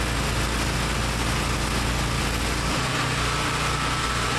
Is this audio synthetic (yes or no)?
no